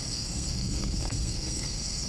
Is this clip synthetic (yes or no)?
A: yes